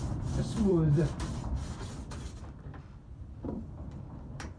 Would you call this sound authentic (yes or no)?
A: no